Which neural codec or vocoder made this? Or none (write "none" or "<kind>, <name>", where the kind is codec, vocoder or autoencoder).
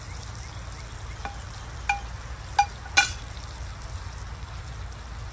none